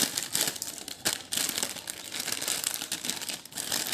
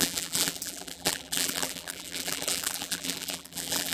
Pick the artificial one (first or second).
second